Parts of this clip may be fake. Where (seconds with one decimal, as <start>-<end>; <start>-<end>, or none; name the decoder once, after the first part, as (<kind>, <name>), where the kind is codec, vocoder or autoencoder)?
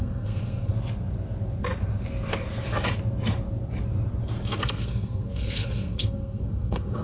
0.0-0.7 (codec, SNAC); 4.6-7.0